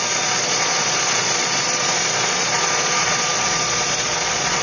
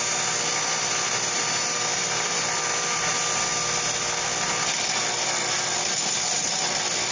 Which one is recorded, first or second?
second